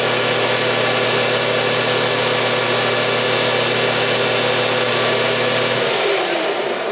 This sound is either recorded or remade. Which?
recorded